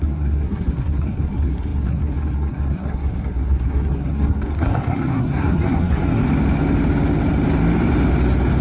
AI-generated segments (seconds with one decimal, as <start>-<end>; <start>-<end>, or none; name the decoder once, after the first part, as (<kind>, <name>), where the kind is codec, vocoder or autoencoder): 0.0-6.2 (codec, SNAC)